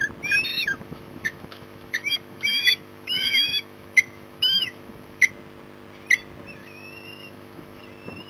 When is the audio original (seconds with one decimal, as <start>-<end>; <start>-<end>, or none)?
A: 0.0-0.5; 5.3-6.6; 7.8-8.3